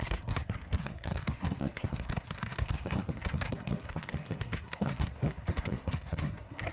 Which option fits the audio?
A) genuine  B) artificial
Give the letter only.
B